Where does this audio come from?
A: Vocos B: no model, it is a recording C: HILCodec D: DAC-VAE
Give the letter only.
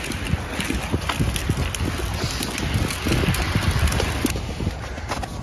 B